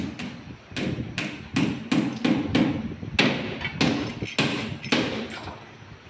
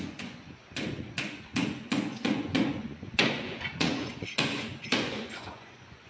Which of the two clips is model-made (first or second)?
second